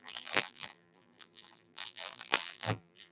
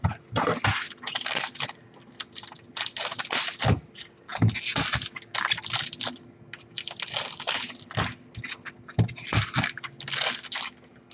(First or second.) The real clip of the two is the second